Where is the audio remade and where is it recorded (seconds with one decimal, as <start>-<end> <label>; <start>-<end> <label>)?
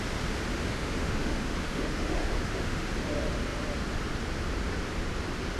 0.0-0.5 recorded; 0.5-2.9 remade; 2.9-5.6 recorded